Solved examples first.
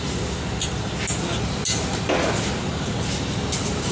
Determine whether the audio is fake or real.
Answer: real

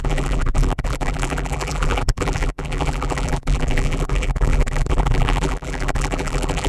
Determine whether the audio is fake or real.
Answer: fake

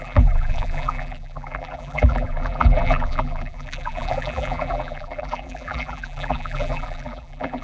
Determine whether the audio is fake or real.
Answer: fake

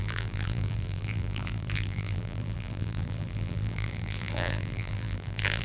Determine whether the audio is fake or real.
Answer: fake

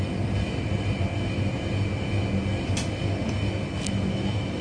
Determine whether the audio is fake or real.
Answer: real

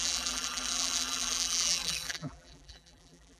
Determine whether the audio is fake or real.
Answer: fake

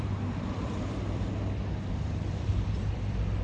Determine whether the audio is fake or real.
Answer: fake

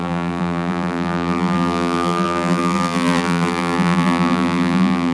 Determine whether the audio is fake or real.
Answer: fake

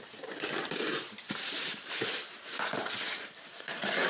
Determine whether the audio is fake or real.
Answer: fake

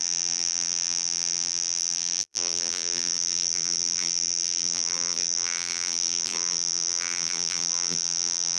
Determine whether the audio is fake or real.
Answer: fake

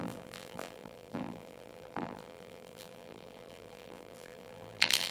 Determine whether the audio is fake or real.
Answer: fake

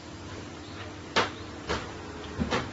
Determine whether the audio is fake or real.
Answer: real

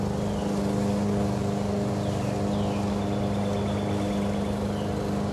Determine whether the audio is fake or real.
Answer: real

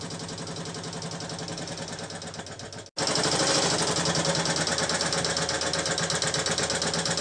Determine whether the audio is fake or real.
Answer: real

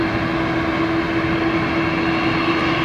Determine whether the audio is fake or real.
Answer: real